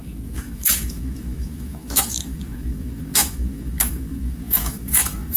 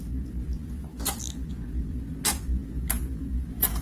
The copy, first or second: first